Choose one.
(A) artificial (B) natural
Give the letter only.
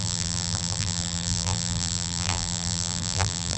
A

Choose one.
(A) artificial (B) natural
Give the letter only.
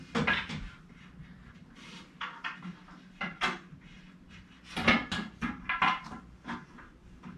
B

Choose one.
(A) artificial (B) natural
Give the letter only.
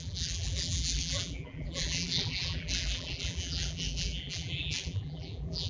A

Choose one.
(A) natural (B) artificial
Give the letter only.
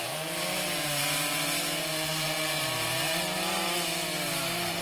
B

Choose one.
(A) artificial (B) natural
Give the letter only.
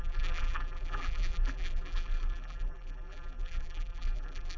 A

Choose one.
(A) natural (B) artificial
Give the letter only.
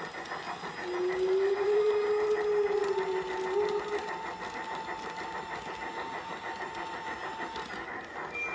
A